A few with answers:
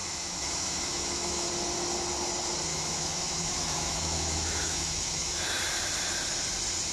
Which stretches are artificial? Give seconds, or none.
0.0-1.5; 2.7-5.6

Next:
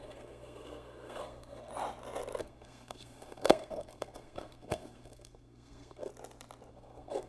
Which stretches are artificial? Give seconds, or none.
0.0-1.7; 2.4-6.1; 6.7-7.3

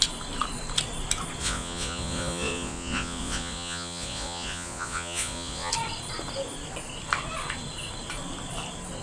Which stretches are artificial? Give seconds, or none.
1.4-5.7

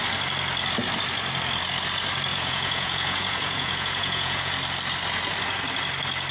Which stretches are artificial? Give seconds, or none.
2.3-4.5

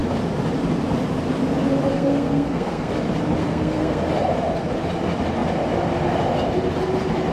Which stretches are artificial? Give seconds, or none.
1.9-2.9; 3.4-4.0

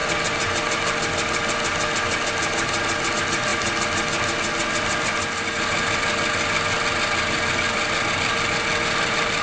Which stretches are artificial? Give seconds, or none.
none

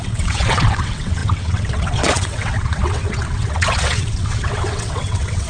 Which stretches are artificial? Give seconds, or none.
0.0-5.5

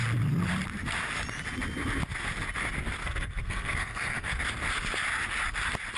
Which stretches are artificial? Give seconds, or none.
3.0-4.4